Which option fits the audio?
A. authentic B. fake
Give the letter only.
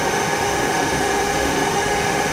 B